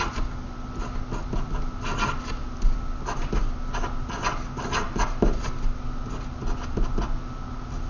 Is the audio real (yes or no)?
yes